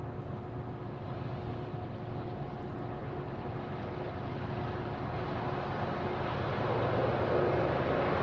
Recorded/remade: recorded